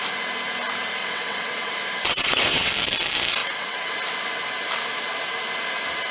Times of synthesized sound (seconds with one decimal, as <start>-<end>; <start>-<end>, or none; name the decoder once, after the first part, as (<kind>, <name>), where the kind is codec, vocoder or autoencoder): 1.0-1.7 (vocoder, WaveNeXt); 2.1-2.7; 3.4-3.9